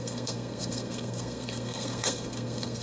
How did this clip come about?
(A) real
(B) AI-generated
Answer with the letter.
B